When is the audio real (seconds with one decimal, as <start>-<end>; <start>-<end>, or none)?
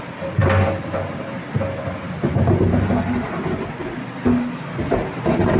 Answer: 0.0-5.6